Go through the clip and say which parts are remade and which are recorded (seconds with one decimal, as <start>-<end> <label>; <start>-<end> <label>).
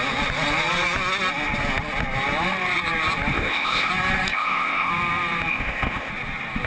0.0-3.3 recorded; 3.3-3.9 remade; 3.9-4.3 recorded; 4.3-4.9 remade; 4.9-5.5 recorded; 5.5-6.1 remade; 6.1-6.7 recorded